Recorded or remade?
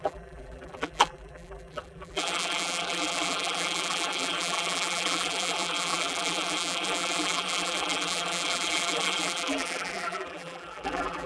remade